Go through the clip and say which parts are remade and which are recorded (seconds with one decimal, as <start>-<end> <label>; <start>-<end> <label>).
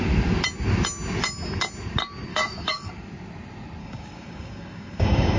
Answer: 0.0-2.3 recorded; 2.3-2.9 remade; 2.9-3.8 recorded; 3.8-5.4 remade